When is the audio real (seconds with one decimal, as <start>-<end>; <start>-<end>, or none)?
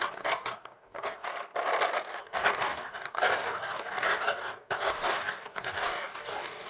1.3-2.2